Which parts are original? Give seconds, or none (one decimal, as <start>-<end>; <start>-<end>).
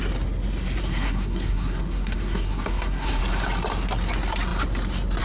0.0-0.8; 3.2-5.2